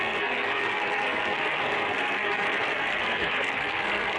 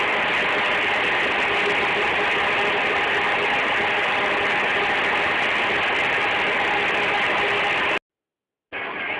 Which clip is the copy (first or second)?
first